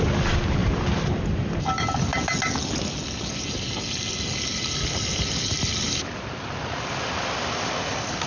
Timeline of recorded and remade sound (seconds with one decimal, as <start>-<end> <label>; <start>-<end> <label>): 0.0-0.6 recorded; 0.6-1.2 remade; 1.2-8.3 recorded